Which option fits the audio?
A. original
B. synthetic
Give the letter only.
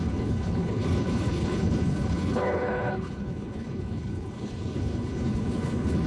B